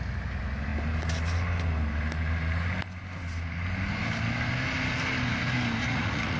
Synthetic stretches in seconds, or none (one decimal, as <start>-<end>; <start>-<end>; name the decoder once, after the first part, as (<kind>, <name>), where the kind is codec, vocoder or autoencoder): 5.8-6.4 (vocoder, Vocos)